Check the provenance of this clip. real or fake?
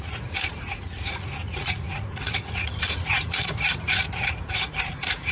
fake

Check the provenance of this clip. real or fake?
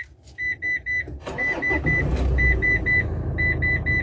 real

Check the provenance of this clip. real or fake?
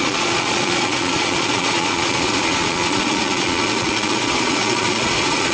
fake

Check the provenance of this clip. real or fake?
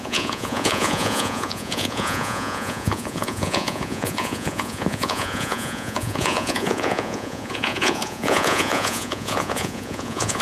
fake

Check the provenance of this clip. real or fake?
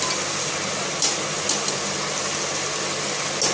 real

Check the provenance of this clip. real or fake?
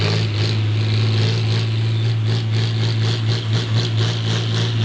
real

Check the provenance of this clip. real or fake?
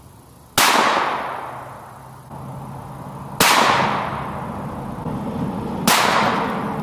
real